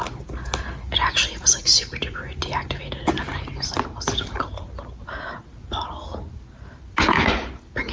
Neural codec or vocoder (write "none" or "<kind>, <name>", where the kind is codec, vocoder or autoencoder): none